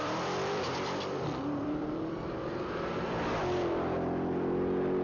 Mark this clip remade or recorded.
remade